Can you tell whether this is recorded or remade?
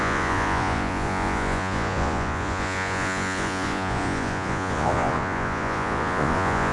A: remade